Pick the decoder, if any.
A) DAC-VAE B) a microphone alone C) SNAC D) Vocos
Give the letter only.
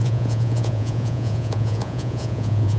D